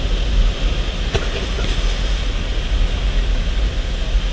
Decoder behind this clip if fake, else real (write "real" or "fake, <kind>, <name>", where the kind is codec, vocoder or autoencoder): real